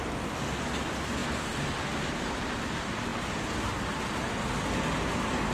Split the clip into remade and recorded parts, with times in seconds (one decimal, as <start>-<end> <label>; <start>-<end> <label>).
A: 0.0-5.5 recorded